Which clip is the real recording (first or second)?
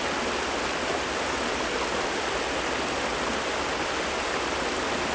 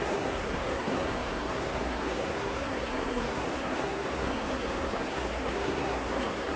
first